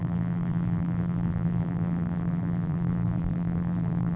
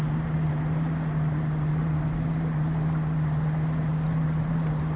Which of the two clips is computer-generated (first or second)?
first